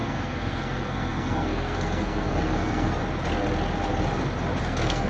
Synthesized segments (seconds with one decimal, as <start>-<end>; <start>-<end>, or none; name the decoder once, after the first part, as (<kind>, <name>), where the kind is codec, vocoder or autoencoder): 0.0-3.0 (codec, SNAC); 4.6-5.1